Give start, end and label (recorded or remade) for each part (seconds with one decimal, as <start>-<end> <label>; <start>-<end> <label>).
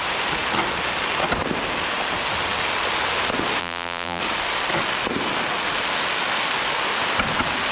0.0-3.6 recorded; 3.6-4.2 remade; 4.2-7.7 recorded